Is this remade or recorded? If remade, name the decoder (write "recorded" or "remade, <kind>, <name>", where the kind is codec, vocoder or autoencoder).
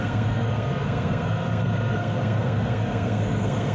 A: remade, codec, SNAC